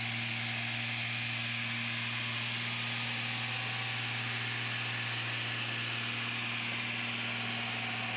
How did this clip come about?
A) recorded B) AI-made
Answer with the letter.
A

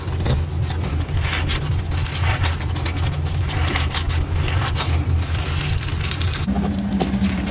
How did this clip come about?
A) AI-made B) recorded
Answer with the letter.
B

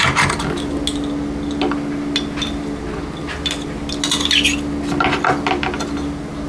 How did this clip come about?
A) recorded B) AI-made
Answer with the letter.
A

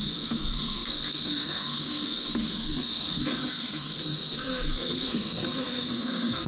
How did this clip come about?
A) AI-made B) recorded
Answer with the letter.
A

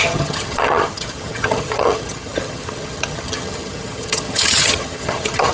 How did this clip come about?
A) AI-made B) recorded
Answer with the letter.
A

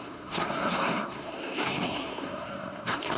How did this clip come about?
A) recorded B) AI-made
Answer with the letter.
B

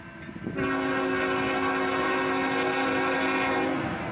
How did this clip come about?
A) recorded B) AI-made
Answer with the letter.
A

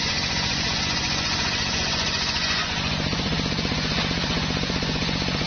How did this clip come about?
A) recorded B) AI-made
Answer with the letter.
B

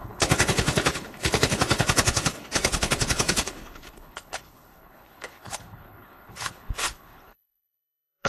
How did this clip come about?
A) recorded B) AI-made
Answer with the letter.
B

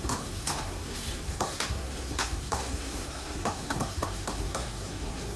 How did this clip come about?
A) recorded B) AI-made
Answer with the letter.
B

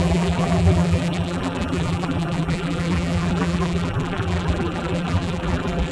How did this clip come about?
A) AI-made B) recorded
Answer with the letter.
A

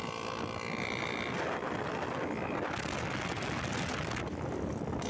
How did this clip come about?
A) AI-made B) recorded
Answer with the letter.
B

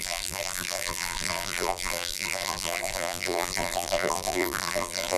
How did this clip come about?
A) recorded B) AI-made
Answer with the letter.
B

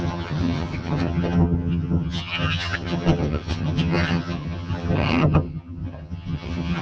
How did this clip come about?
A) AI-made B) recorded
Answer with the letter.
A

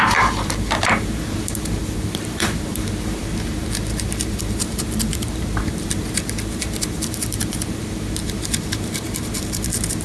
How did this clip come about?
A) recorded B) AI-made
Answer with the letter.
B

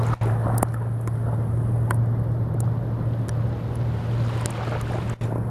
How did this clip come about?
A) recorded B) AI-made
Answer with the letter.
A